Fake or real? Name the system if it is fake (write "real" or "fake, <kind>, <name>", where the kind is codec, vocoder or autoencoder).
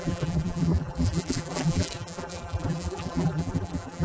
fake, vocoder, BigVGAN v2